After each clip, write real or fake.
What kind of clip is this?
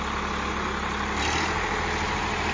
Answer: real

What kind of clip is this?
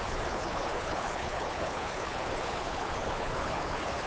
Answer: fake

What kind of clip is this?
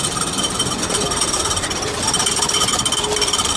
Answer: fake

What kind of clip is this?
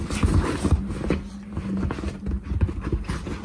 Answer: real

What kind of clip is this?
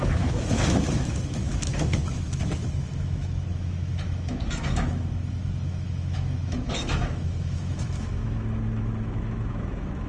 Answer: fake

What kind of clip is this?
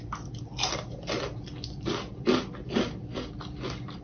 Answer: real